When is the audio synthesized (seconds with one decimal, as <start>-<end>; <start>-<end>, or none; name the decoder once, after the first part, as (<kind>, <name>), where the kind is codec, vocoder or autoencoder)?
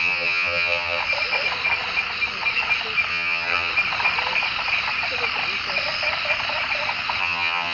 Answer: 0.0-1.0 (vocoder, HiFi-GAN); 3.1-3.7; 7.2-7.7